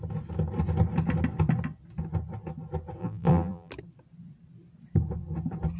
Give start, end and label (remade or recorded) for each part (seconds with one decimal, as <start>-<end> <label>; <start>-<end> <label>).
0.0-3.0 recorded; 3.0-3.7 remade; 3.7-5.8 recorded